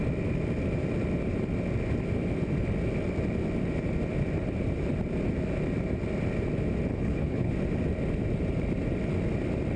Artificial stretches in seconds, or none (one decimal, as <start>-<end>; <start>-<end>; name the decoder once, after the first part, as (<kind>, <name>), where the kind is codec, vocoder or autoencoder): 6.9-7.5 (codec, HILCodec)